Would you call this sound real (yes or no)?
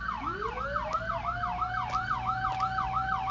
yes